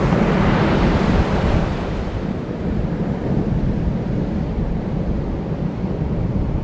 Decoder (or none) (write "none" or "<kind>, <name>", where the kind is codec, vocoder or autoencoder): vocoder, BigVGAN v2